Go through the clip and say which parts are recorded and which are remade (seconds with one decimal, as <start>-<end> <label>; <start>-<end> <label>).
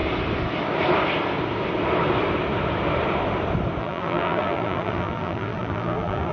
0.0-3.8 recorded; 3.8-6.3 remade